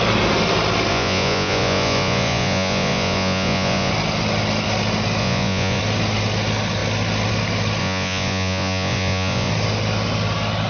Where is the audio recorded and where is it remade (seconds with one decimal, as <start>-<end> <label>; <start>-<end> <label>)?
0.0-0.9 recorded; 0.9-3.9 remade; 3.9-5.2 recorded; 5.2-5.8 remade; 5.8-7.8 recorded; 7.8-9.5 remade; 9.5-10.7 recorded